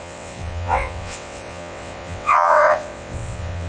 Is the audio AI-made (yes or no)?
yes